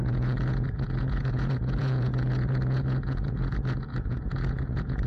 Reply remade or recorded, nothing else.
remade